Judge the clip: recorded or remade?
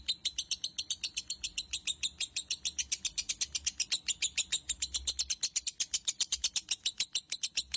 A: recorded